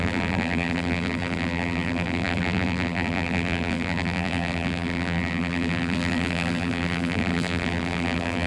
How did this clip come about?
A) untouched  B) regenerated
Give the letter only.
B